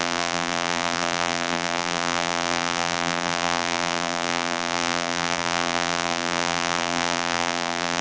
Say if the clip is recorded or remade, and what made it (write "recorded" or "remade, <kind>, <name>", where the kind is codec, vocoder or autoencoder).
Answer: remade, vocoder, BigVGAN v2